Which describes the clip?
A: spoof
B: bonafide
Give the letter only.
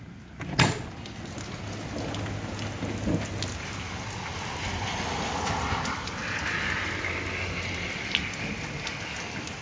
B